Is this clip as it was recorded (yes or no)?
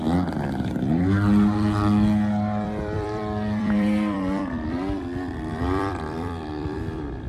no